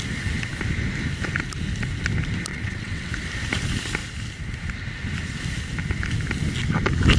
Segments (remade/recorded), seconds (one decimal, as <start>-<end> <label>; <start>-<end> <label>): 0.0-2.5 recorded; 2.5-3.1 remade; 3.1-7.2 recorded